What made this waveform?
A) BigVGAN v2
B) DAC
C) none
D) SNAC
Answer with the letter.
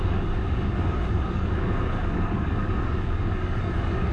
B